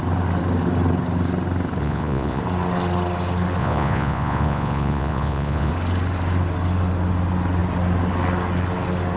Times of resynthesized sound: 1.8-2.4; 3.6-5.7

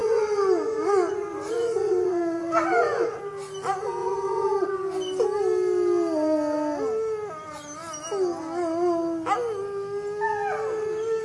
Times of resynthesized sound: 0.0-3.2; 4.0-4.7

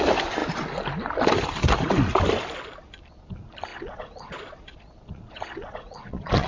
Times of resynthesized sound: 3.7-6.5

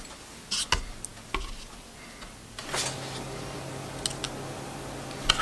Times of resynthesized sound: none

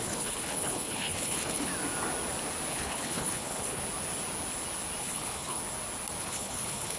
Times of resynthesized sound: 0.0-1.7; 2.7-3.8; 5.0-5.6; 6.2-7.0

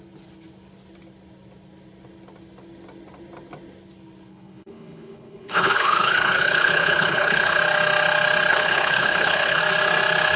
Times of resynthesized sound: 4.3-7.6; 8.5-9.6